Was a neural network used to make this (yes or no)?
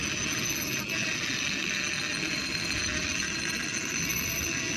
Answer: no